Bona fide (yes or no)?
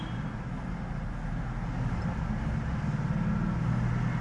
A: yes